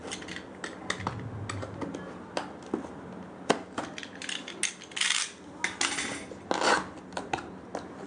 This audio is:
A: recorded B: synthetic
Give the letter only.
A